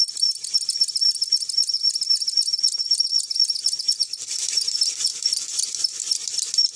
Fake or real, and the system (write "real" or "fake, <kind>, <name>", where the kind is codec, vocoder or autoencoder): real